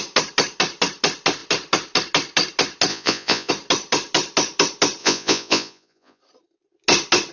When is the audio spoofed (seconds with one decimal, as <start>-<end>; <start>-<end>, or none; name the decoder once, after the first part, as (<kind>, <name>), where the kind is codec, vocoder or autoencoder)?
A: 2.9-3.5 (vocoder, Vocos); 5.0-6.2